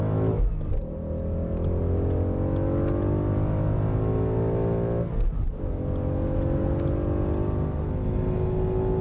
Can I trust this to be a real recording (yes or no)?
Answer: yes